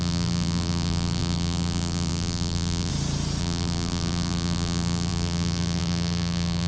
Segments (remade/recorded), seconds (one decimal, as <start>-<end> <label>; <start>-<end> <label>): 0.0-2.9 remade; 2.9-3.4 recorded; 3.4-6.7 remade

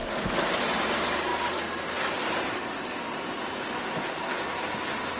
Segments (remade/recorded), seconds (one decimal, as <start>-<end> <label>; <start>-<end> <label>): 0.0-5.2 recorded

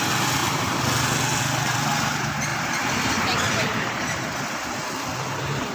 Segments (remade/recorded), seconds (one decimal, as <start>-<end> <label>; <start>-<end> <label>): 0.0-0.4 recorded; 0.4-1.4 remade; 1.4-2.5 recorded; 2.5-5.7 remade